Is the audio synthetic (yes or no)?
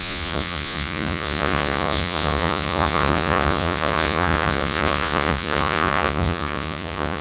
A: yes